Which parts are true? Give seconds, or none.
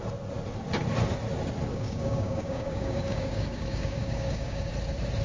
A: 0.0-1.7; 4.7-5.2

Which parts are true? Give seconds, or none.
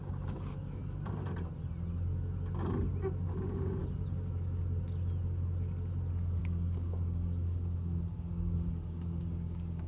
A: 0.8-3.3; 3.8-6.4